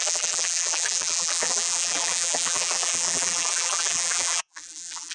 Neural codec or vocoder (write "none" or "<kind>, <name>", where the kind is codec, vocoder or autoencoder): vocoder, BigVGAN v2